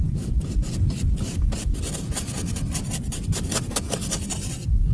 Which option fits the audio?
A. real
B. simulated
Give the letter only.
A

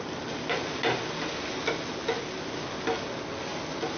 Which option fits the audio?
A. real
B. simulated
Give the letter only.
A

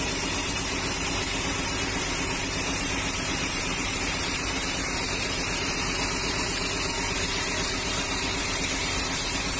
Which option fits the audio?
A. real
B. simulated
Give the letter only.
B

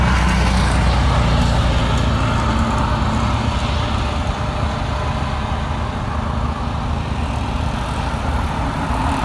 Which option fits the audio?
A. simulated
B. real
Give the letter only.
B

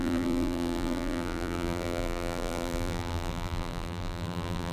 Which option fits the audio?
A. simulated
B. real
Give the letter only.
A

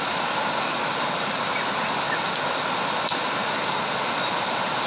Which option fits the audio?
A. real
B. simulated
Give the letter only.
A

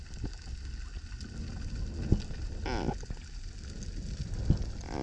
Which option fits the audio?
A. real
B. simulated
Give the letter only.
A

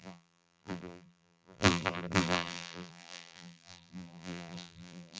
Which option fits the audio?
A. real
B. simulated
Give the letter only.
B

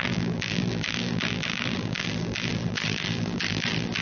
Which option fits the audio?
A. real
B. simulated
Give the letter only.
B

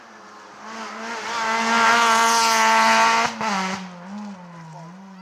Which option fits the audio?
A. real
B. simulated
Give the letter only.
A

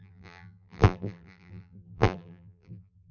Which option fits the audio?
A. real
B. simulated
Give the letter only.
B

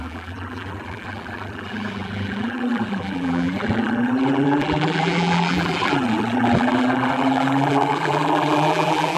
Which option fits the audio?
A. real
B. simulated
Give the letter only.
B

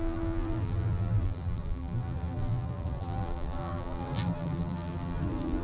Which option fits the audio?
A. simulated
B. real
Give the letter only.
A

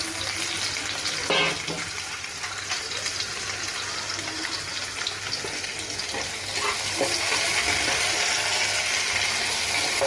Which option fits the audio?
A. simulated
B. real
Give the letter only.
B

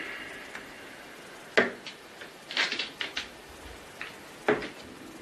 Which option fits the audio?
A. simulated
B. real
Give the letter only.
B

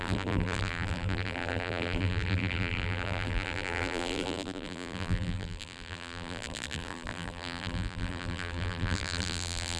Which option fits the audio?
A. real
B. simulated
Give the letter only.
B